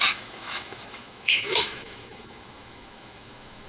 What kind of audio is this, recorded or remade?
remade